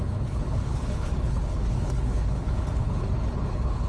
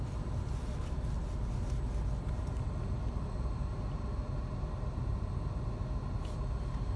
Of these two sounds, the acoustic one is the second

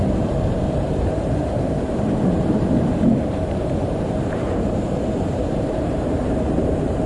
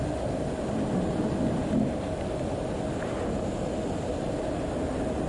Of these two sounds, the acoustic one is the second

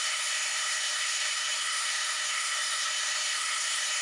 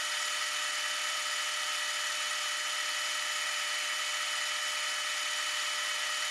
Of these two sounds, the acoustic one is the second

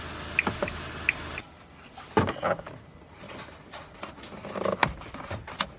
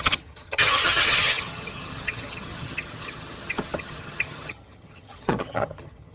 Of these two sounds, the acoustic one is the first